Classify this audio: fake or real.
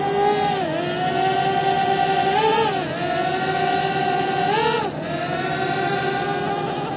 real